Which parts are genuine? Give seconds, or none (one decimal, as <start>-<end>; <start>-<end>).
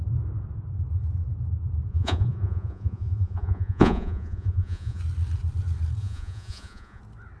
0.0-1.9; 5.0-6.0; 7.0-7.4